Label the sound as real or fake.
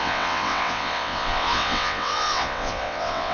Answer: fake